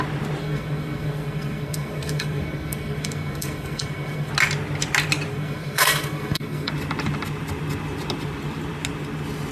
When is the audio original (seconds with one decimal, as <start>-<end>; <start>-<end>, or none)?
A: 0.0-0.4; 4.3-5.3; 6.7-9.5